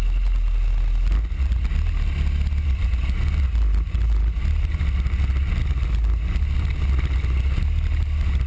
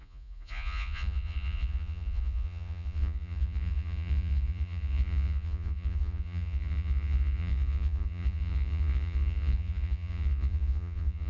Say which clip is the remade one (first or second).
second